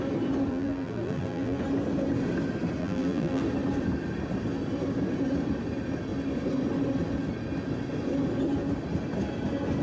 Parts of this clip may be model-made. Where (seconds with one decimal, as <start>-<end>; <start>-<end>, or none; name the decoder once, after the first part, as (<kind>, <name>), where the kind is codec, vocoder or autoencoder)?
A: 0.5-1.6 (vocoder, BigVGAN v2); 2.8-3.4